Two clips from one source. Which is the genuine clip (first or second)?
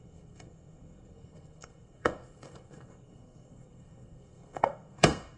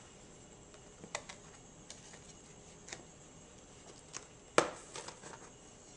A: second